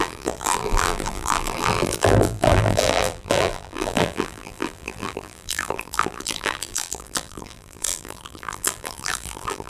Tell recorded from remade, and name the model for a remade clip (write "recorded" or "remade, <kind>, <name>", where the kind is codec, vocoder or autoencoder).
remade, vocoder, BigVGAN v2